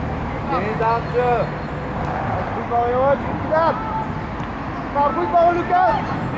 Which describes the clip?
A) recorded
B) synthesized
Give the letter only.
A